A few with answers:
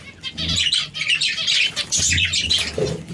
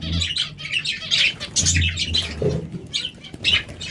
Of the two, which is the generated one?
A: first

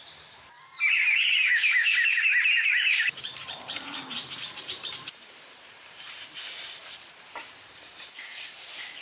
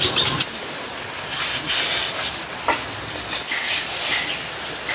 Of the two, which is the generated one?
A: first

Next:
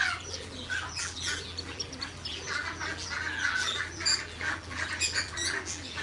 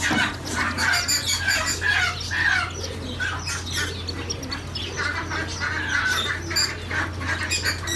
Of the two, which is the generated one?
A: first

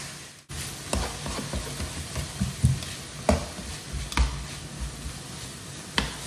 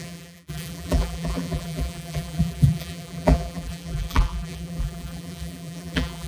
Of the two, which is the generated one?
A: second